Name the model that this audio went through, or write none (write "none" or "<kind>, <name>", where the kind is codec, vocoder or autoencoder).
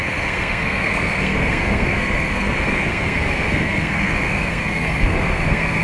codec, SNAC